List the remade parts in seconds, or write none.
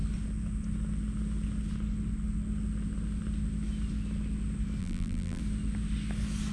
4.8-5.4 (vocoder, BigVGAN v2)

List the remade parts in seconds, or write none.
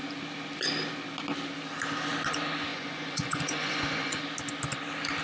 2.7-4.2 (vocoder, Vocos)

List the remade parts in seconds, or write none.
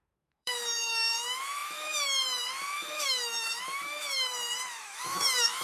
0.0-5.6 (autoencoder, DAC-VAE)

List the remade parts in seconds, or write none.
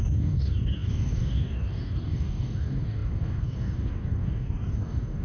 0.0-5.2 (codec, DAC)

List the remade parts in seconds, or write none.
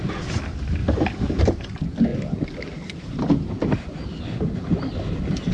none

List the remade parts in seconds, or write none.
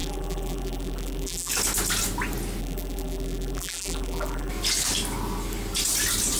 0.0-1.5 (vocoder, BigVGAN v2); 2.6-4.5